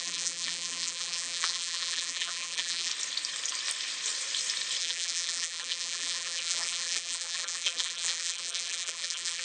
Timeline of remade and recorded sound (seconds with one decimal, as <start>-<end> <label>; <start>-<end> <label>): 0.0-2.9 remade; 2.9-4.8 recorded; 4.8-9.4 remade